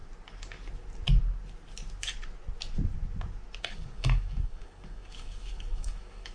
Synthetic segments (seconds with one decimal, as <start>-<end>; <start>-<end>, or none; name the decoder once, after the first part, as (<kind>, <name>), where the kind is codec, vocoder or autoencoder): 3.6-6.3 (codec, DAC)